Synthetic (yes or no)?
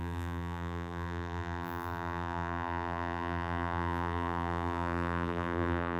yes